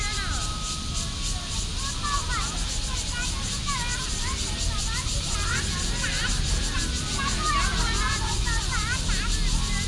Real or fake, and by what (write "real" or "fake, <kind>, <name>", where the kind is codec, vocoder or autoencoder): real